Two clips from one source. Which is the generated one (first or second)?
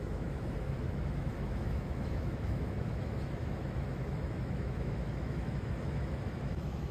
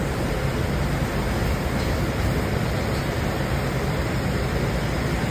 first